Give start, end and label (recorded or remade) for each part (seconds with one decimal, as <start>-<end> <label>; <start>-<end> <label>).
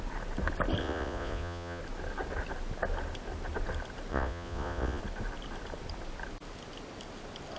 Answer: 0.0-0.8 recorded; 0.8-1.8 remade; 1.8-4.1 recorded; 4.1-5.0 remade; 5.0-7.6 recorded